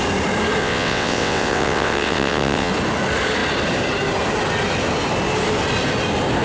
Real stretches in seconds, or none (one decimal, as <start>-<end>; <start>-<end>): 0.0-0.6; 2.7-6.4

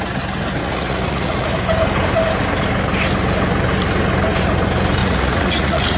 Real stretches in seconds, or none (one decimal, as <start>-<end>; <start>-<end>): 0.0-0.6; 1.5-5.0

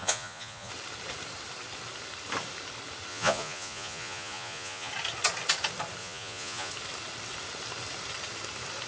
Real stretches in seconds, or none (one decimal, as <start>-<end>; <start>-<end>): 0.7-3.1; 4.9-6.0; 6.7-8.9

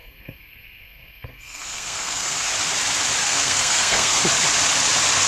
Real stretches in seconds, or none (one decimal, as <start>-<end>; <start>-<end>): 2.5-3.2; 4.2-5.3